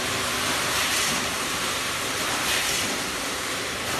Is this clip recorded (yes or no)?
no